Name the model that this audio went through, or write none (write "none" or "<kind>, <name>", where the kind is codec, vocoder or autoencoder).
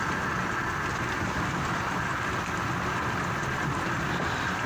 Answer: none